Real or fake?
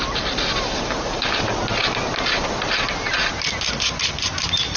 real